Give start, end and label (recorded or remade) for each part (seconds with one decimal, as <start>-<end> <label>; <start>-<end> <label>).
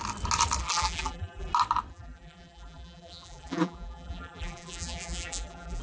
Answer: 0.0-0.6 recorded; 0.6-1.5 remade; 1.5-1.9 recorded; 1.9-5.8 remade